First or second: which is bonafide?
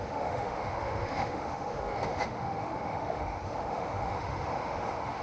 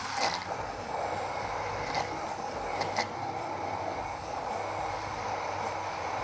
second